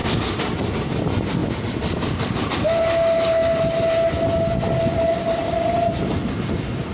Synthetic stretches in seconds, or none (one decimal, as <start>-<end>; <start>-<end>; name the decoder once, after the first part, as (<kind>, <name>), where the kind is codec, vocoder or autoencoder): none